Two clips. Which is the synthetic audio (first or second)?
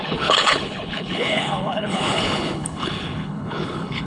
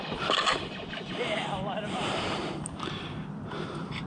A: first